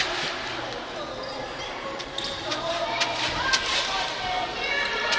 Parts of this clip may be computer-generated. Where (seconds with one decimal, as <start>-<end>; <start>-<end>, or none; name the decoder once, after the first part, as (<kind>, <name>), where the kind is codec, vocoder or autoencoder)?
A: 1.4-4.1 (vocoder, BigVGAN v2)

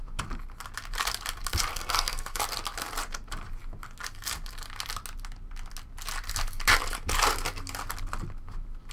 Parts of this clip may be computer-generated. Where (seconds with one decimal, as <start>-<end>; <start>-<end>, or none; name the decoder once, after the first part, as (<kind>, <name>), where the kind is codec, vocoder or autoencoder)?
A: 1.7-2.4 (codec, SNAC)

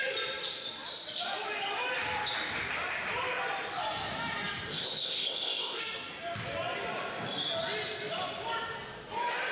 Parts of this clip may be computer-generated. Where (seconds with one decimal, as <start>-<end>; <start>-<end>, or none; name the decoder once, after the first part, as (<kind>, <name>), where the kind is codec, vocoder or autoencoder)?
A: 4.7-5.8 (codec, ZipCodec)

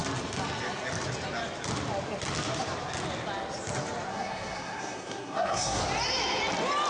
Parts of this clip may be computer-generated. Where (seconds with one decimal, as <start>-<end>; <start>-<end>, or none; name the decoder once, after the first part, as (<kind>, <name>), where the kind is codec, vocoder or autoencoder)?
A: 4.1-5.8 (codec, SNAC)